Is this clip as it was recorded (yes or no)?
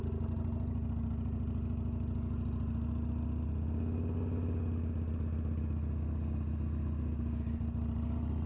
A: yes